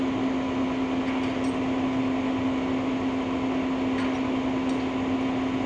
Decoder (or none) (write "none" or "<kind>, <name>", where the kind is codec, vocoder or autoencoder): none